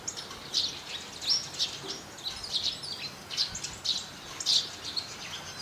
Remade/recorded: recorded